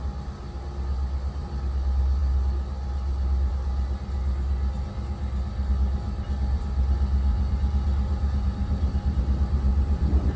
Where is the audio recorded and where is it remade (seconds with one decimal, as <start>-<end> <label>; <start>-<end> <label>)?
0.0-7.3 recorded; 7.3-9.2 remade; 9.2-9.7 recorded; 9.7-10.4 remade